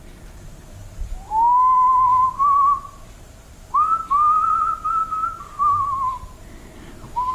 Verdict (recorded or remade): recorded